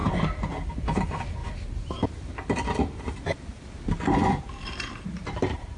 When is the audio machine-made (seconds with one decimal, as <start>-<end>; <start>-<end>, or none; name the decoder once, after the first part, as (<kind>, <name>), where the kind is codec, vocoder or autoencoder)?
0.7-1.4 (vocoder, BigVGAN v2); 4.9-5.8